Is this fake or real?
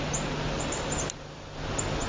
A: real